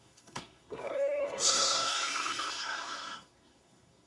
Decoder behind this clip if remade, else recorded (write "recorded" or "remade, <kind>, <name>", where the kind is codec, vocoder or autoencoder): remade, codec, SNAC